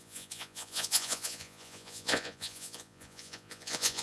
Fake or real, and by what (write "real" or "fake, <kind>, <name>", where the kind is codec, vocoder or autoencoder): fake, vocoder, Vocos